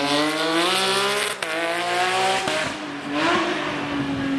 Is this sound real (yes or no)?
yes